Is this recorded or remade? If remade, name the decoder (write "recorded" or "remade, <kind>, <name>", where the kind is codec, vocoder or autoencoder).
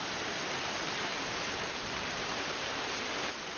remade, vocoder, BigVGAN v2